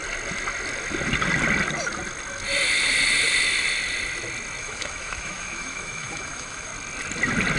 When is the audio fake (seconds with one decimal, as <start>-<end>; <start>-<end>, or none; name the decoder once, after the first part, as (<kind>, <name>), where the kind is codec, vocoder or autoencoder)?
4.6-6.7 (autoencoder, DAC-VAE)